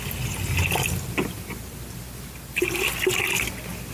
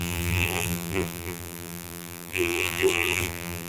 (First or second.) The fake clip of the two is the second